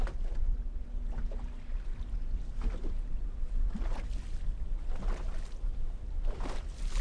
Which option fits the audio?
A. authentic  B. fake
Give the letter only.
A